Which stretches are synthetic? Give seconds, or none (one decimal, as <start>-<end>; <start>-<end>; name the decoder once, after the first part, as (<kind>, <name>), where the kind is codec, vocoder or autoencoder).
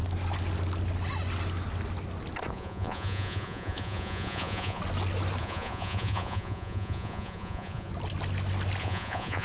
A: 2.5-4.8 (vocoder, Vocos); 5.4-7.9; 8.8-9.4